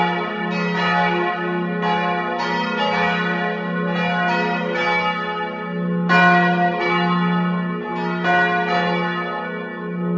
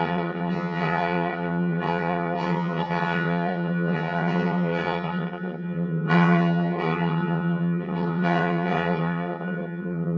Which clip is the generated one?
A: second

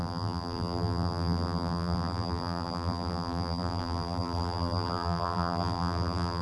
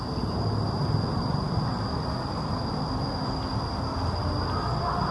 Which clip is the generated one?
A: first